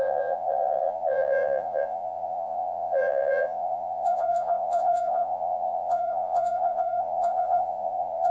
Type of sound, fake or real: fake